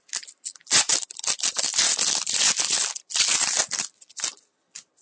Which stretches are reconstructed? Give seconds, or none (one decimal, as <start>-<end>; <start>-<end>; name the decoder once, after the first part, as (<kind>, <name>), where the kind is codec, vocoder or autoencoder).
none